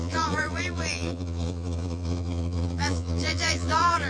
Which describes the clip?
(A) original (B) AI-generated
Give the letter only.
B